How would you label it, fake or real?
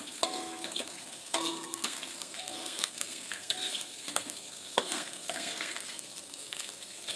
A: fake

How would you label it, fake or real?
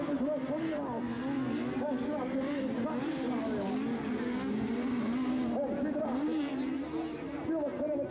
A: real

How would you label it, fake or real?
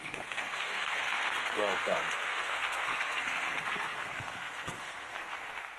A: fake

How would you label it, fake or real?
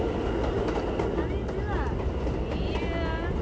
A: real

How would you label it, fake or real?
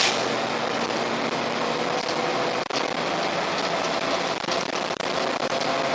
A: real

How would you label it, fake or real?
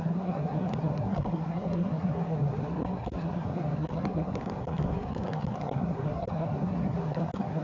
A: fake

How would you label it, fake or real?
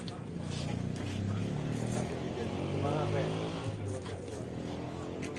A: real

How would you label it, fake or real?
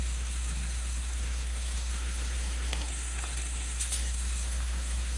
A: fake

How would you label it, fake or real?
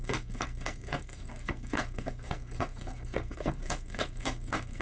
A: fake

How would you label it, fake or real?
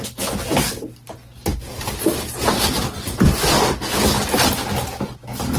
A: real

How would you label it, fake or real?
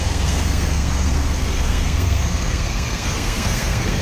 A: fake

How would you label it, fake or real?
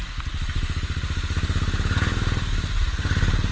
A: real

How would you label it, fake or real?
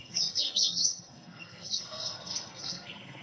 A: fake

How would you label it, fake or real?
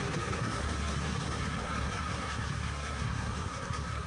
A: fake